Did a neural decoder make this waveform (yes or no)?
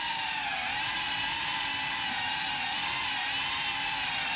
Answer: yes